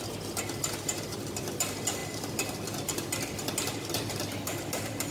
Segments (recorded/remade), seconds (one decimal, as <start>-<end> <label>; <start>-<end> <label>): 0.0-5.1 recorded